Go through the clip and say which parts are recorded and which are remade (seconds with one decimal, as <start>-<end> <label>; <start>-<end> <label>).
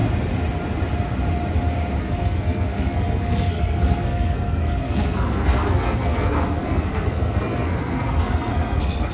0.0-2.0 recorded; 2.0-9.1 remade